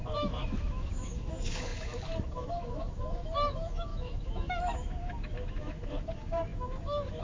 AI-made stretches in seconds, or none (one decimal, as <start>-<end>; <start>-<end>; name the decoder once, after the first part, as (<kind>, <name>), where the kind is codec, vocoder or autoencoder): 0.0-7.2 (autoencoder, DAC-VAE)